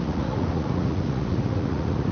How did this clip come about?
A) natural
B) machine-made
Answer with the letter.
B